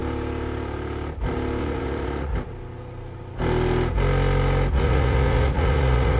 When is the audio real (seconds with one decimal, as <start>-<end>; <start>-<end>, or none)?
0.0-1.6; 2.3-4.7